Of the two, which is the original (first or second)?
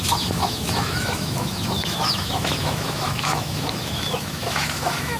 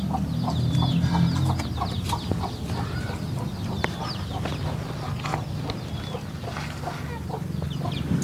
second